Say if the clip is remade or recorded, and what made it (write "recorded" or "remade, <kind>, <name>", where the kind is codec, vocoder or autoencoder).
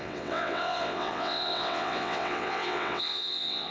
remade, vocoder, WaveNeXt